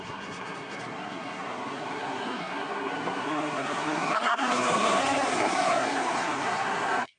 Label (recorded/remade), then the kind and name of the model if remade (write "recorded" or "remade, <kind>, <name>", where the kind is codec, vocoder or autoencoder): remade, codec, SNAC